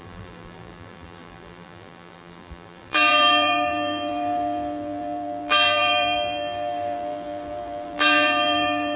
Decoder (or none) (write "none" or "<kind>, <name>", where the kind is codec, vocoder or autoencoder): vocoder, BigVGAN v2